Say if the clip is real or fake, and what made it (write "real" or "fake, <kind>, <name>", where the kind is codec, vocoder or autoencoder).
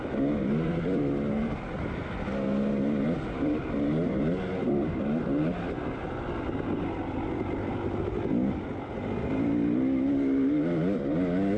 real